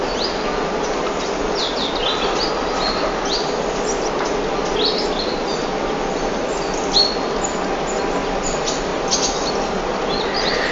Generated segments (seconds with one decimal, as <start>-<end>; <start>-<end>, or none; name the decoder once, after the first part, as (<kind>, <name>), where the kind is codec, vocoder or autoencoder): none